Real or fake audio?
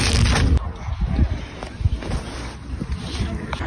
real